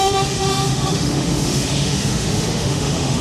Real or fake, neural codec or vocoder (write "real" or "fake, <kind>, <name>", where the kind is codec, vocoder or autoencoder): fake, autoencoder, DAC-VAE